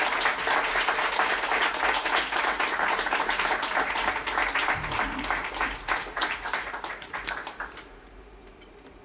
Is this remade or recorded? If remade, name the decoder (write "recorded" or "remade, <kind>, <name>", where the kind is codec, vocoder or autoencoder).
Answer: remade, vocoder, BigVGAN v2